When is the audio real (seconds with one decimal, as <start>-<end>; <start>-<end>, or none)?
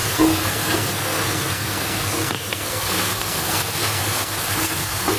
none